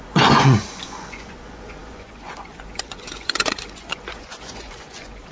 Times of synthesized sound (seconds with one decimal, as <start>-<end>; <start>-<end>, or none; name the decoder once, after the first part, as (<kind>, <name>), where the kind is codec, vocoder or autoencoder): 0.0-5.3 (vocoder, Vocos)